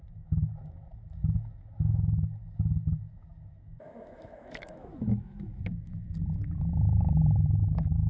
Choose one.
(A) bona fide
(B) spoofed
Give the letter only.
B